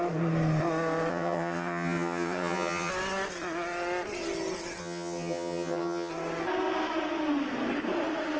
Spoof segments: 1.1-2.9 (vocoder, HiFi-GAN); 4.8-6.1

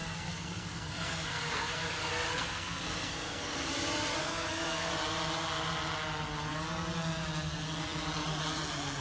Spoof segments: 0.0-3.7 (codec, SNAC); 4.2-4.9

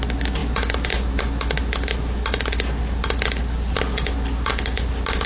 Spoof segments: none

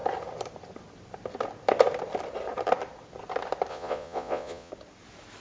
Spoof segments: 3.7-4.7 (vocoder, Vocos)